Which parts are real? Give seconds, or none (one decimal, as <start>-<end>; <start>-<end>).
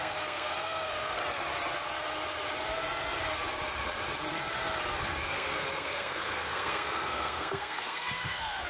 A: 1.2-5.3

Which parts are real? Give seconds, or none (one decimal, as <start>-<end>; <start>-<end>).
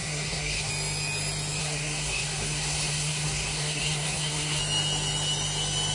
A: 0.7-1.6; 4.6-5.9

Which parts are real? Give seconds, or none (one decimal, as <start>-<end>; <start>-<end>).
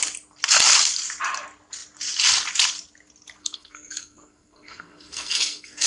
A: 0.0-3.4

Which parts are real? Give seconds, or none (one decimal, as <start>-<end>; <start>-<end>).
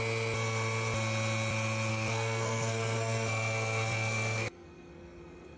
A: 0.0-1.9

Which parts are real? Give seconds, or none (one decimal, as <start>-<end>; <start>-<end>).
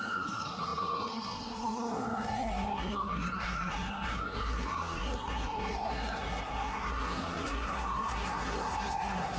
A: none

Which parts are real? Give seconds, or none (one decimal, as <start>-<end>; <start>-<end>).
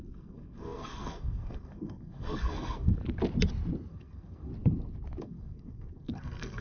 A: 3.0-3.9; 4.5-5.2